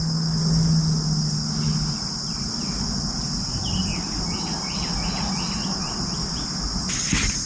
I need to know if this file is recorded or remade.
recorded